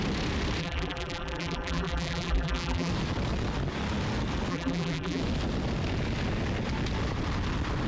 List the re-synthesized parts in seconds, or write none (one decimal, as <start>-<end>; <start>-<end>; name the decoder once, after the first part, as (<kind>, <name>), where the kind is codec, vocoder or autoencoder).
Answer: 0.6-2.9 (vocoder, BigVGAN v2); 4.5-5.2